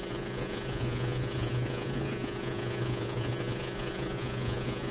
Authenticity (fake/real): fake